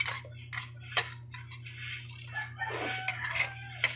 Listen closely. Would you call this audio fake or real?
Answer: real